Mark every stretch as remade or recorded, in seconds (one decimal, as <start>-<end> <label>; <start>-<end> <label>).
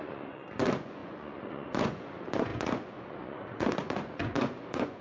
0.0-5.0 remade